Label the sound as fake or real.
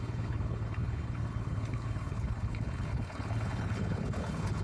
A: fake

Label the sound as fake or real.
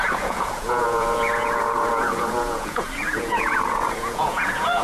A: fake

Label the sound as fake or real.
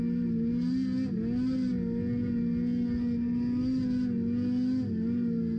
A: real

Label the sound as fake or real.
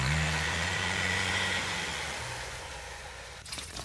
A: fake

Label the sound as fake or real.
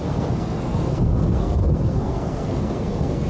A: fake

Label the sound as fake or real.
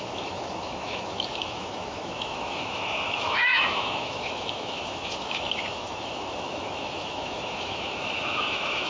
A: fake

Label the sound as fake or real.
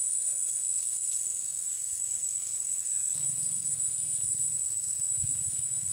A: fake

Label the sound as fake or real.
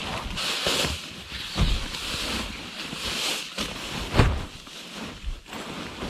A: real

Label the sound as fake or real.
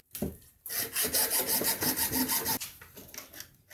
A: real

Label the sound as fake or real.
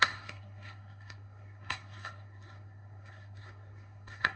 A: fake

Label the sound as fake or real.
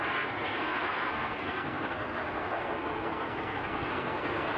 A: fake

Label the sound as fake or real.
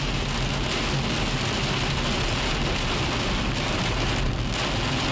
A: real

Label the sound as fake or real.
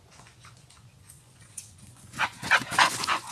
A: fake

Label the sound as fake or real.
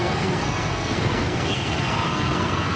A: fake